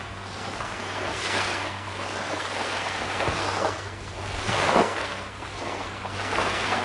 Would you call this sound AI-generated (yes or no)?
yes